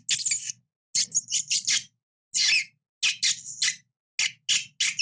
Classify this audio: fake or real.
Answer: real